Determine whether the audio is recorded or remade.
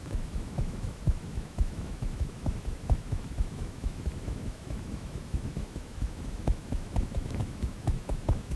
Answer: remade